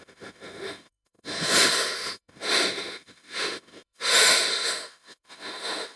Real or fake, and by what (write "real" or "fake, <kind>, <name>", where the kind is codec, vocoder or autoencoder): fake, autoencoder, DAC-VAE